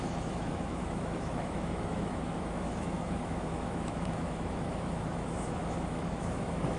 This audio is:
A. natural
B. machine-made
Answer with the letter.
B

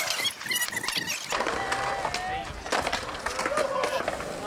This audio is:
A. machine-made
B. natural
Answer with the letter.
B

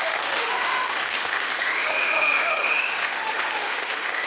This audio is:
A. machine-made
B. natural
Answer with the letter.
A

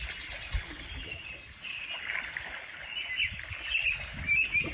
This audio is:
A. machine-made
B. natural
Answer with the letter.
B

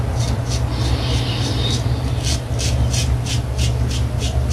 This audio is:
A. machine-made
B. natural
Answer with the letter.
B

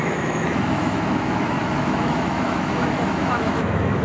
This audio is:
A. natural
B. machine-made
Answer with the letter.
B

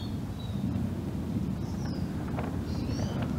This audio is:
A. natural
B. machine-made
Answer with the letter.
A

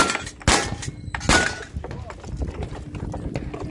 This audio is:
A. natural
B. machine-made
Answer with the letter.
A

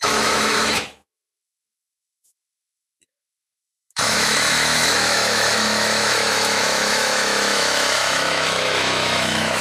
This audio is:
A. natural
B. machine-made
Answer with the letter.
B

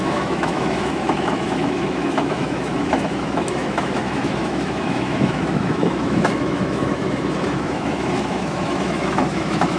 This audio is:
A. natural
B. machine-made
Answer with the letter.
B